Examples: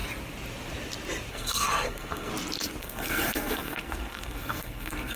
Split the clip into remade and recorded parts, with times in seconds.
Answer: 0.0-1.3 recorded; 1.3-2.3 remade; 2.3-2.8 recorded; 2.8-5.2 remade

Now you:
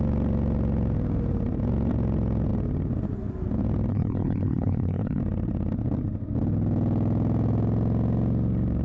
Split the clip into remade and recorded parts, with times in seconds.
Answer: 0.0-3.9 recorded; 3.9-5.2 remade; 5.2-8.8 recorded

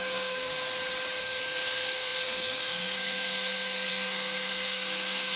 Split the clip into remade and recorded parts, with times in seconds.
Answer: 0.0-0.5 remade; 0.5-1.2 recorded; 1.2-5.4 remade

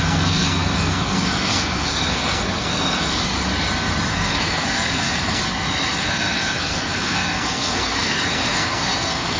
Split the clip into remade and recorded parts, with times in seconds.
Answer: 0.0-3.3 remade; 3.3-4.1 recorded; 4.1-5.4 remade; 5.4-6.0 recorded; 6.0-9.4 remade

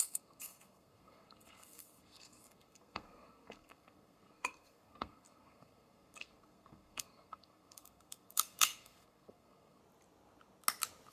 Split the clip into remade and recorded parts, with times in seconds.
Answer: 0.0-9.8 remade; 9.8-11.1 recorded

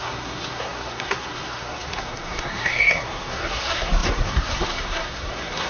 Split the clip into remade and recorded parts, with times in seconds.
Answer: 0.0-5.7 remade

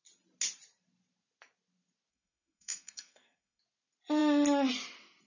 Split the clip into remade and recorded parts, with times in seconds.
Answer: 0.0-2.1 recorded; 2.1-3.6 remade; 3.6-5.3 recorded

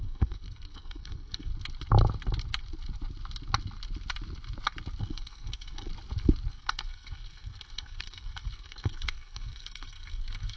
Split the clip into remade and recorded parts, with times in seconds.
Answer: 0.0-1.5 remade; 1.5-5.0 recorded; 5.0-5.9 remade; 5.9-6.5 recorded; 6.5-10.6 remade